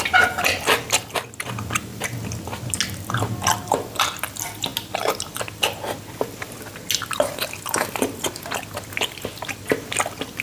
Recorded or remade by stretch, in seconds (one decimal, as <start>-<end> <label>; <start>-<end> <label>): 0.0-10.4 recorded